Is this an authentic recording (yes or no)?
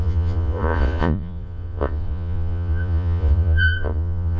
no